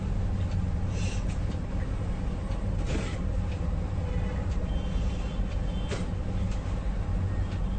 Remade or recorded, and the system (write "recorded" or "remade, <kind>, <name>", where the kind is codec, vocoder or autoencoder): recorded